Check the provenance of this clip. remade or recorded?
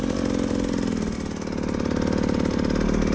recorded